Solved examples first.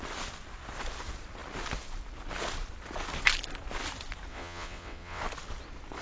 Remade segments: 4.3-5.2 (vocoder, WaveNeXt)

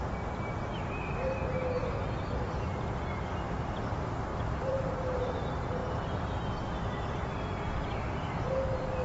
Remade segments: 1.8-2.3 (vocoder, BigVGAN v2); 4.3-5.3; 5.8-8.4

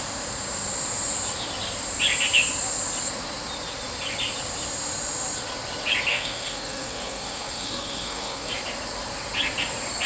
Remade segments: 6.1-8.5 (codec, SNAC)

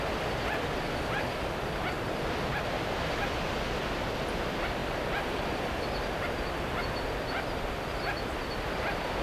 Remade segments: none

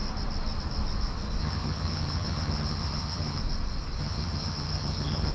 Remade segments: 1.4-3.4 (vocoder, HiFi-GAN); 4.0-5.3

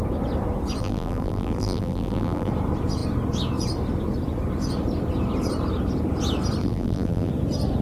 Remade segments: 0.8-2.5 (vocoder, BigVGAN v2); 6.6-7.3

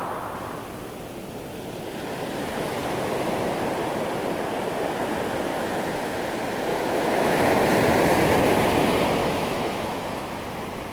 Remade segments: 5.5-6.2 (autoencoder, DAC-VAE); 6.7-7.4; 9.2-10.4